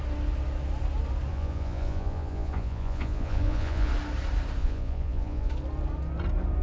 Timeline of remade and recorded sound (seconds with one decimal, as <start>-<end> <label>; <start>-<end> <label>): 0.0-1.3 recorded; 1.3-3.9 remade; 3.9-4.6 recorded; 4.6-5.5 remade; 5.5-6.6 recorded